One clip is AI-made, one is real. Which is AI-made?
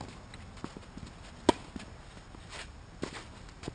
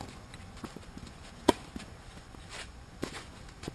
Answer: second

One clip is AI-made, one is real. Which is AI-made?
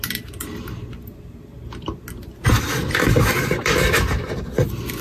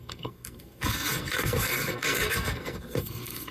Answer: second